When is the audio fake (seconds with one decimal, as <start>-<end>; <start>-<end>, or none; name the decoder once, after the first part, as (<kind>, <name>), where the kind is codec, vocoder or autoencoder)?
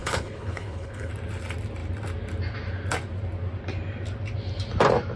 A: 0.0-1.1 (codec, HILCodec)